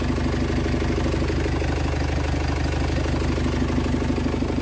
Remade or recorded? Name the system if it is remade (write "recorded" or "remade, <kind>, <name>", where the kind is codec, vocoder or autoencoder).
recorded